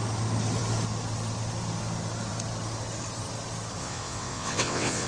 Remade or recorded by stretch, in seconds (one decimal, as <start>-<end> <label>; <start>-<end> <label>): 0.0-3.8 recorded; 3.8-5.1 remade